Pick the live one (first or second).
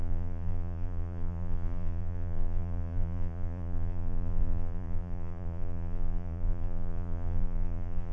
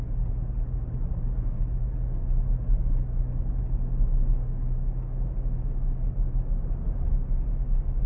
second